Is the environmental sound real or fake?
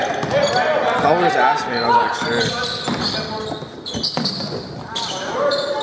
real